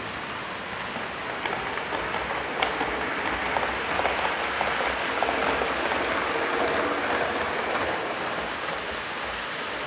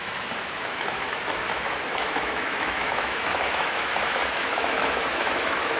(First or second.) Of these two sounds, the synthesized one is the second